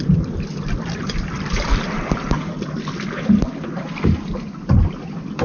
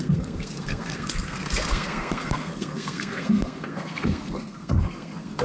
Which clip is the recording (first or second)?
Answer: first